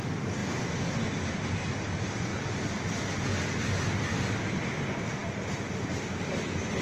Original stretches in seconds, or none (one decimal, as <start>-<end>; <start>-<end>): 0.0-6.8